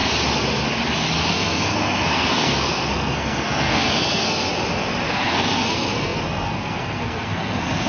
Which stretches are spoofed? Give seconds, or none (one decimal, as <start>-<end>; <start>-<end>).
1.3-4.5; 5.1-7.9